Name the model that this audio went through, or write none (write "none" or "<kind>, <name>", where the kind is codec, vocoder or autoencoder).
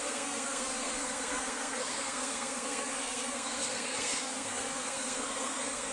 codec, SNAC